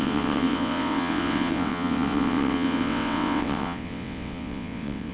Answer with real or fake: fake